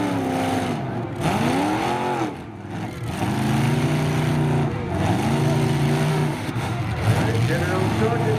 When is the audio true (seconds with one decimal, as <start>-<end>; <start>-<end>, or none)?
0.0-6.1; 6.8-8.4